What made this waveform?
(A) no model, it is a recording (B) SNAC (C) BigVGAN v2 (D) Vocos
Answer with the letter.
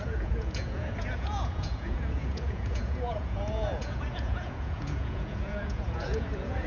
D